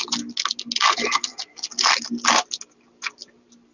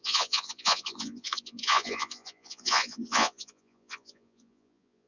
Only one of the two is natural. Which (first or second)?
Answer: first